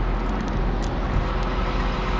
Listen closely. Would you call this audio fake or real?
real